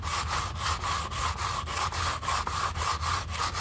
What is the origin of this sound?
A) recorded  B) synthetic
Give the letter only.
A